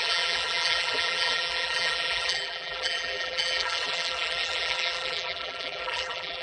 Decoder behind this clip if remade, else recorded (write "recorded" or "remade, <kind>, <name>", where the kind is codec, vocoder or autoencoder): remade, vocoder, BigVGAN v2